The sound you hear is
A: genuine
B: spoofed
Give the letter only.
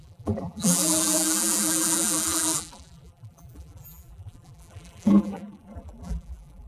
B